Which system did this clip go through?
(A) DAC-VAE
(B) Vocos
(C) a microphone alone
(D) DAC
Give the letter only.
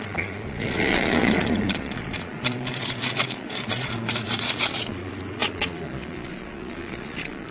B